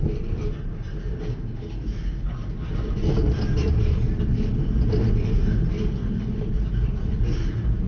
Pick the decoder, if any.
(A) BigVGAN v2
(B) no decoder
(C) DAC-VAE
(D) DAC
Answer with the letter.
B